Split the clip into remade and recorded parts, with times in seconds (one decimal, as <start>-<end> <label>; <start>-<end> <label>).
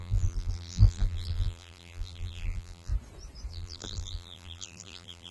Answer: 0.0-2.9 remade; 2.9-3.5 recorded; 3.5-5.3 remade